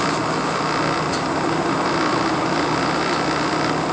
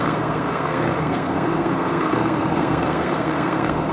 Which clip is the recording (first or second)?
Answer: first